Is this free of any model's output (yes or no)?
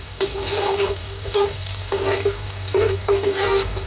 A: no